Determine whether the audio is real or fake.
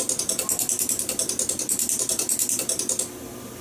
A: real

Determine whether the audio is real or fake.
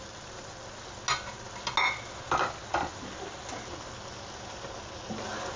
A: real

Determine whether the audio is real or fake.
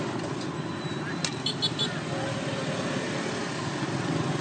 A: real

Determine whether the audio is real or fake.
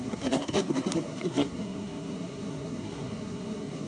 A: fake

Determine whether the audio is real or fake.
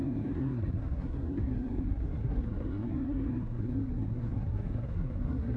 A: fake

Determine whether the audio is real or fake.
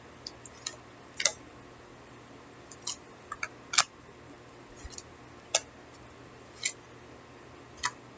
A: real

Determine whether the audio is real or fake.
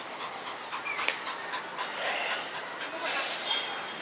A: real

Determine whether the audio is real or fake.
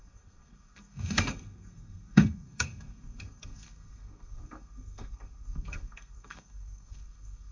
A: fake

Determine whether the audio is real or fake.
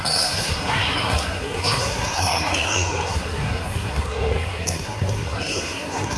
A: fake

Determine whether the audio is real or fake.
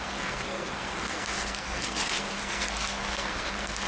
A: fake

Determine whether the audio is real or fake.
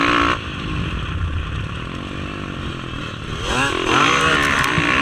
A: real